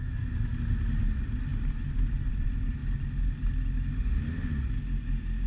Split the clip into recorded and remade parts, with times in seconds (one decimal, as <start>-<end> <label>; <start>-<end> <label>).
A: 0.0-5.5 recorded